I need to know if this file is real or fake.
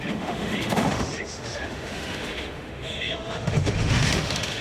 fake